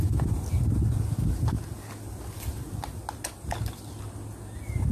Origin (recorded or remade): recorded